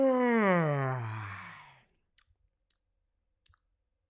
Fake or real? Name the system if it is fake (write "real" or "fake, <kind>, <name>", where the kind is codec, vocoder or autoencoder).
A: real